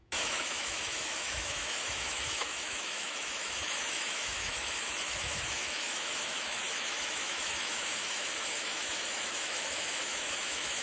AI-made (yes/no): yes